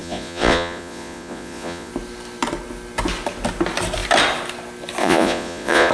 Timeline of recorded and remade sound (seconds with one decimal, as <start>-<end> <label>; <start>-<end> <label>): 0.0-1.9 remade; 1.9-5.0 recorded; 5.0-5.9 remade